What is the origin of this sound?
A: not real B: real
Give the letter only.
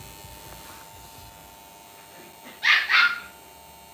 B